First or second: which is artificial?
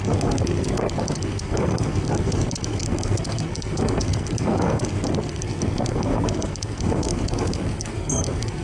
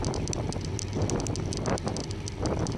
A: first